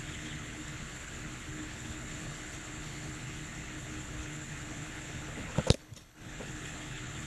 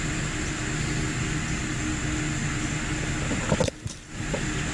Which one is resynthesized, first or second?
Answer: first